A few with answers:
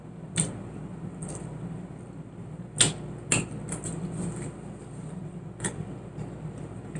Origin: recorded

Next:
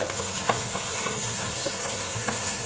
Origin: remade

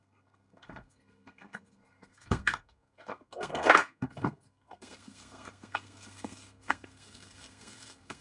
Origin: remade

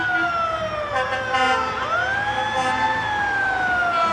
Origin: recorded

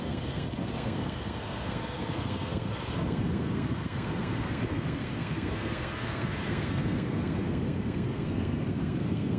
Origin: remade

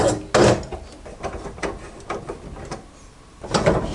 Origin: recorded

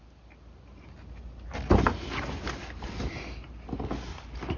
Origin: recorded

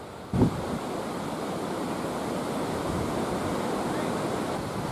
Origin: recorded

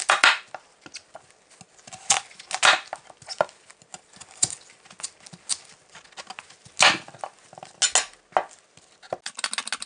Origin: recorded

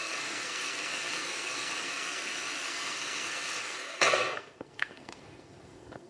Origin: remade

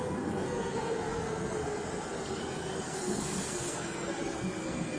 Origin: remade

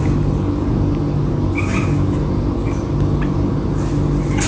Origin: recorded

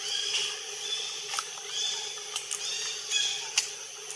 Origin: recorded